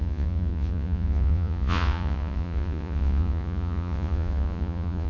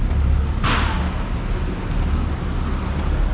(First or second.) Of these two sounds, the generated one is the first